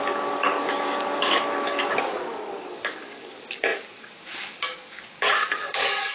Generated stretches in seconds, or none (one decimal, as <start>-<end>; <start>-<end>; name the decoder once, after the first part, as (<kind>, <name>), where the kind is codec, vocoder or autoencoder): 0.0-6.1 (codec, DAC)